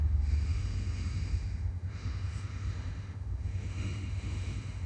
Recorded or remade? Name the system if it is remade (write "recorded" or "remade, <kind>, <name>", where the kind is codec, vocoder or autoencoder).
remade, autoencoder, DAC-VAE